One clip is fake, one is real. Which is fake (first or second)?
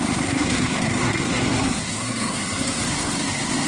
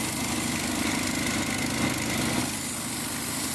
first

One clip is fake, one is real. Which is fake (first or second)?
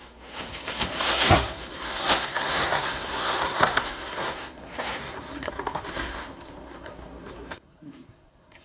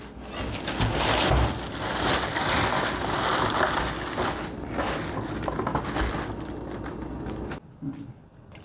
first